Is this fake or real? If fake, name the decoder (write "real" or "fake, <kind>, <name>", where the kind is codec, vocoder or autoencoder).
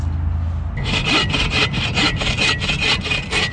real